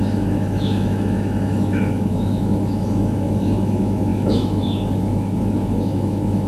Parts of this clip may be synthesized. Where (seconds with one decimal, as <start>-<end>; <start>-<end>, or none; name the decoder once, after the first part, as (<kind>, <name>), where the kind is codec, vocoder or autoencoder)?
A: 0.0-6.5 (autoencoder, DAC-VAE)